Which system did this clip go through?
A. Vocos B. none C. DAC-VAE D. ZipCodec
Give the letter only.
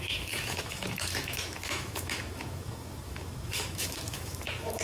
C